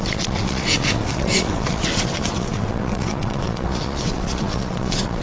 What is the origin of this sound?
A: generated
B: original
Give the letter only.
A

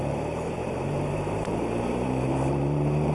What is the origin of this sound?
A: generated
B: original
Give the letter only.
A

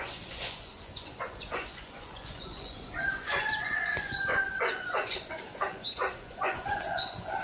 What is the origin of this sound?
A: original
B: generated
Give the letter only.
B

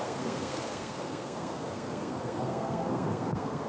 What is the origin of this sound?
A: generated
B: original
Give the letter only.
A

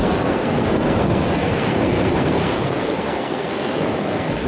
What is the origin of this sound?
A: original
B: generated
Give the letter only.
B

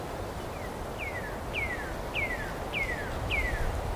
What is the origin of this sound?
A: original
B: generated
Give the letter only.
A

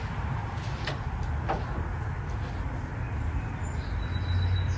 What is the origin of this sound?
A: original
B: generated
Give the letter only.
A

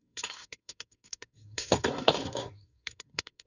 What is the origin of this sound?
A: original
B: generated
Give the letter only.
B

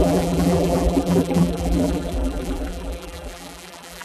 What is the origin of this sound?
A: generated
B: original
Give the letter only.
A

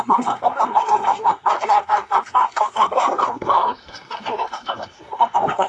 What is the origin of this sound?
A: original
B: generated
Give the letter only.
B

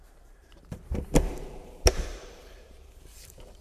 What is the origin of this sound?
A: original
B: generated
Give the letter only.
B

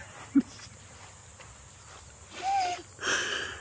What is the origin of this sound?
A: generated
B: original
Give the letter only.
B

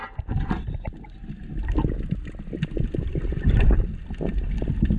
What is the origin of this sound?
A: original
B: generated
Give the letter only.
A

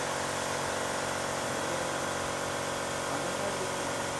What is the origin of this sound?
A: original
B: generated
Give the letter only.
A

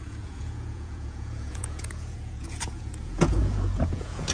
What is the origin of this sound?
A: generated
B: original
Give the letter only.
A